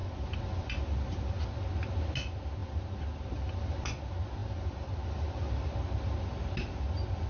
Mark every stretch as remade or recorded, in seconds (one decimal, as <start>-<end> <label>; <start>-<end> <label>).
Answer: 0.0-1.4 remade; 1.4-2.6 recorded; 2.6-3.9 remade; 3.9-4.4 recorded; 4.4-5.5 remade; 5.5-7.3 recorded